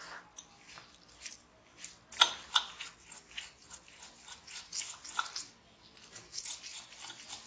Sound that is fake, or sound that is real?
real